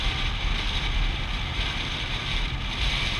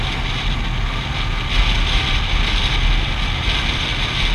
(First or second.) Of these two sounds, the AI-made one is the first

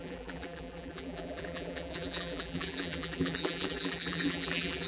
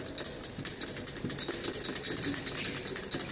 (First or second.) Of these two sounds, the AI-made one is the first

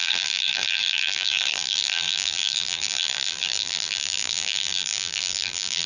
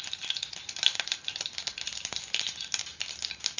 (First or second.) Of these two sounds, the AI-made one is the first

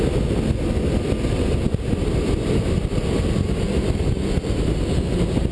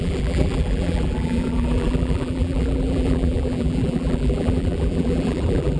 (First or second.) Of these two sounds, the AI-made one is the second